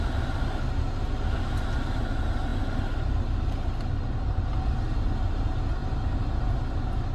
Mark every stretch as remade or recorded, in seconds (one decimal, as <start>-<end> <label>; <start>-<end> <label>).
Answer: 0.0-7.1 recorded